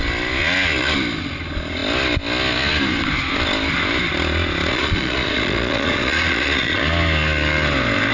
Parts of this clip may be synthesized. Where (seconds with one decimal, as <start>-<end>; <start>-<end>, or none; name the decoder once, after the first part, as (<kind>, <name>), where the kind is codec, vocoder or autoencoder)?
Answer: 4.7-6.8 (vocoder, Vocos)